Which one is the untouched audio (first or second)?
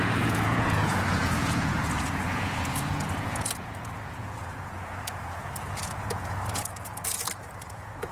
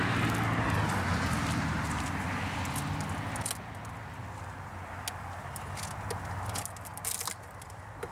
second